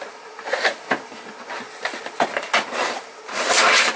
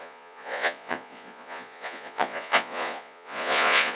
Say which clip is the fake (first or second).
second